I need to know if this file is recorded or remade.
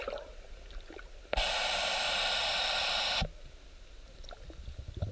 recorded